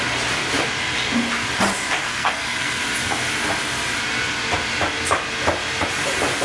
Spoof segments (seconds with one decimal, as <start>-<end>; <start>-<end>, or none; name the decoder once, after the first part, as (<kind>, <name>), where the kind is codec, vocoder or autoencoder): 2.0-2.8 (codec, SNAC)